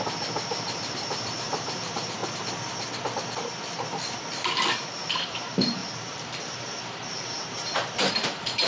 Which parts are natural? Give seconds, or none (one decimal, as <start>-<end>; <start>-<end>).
2.2-5.1